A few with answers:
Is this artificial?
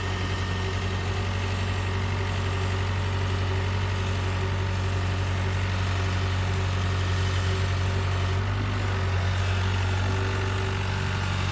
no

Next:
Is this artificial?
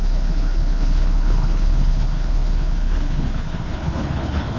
yes